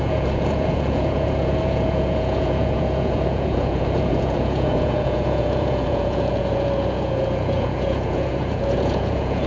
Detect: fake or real fake